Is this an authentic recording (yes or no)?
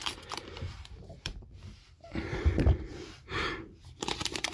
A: no